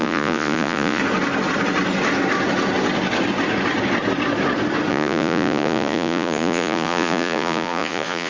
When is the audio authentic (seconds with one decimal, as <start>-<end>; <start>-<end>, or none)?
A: 1.0-4.9